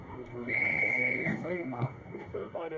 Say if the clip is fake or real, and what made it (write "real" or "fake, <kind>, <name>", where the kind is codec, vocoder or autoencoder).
fake, codec, SNAC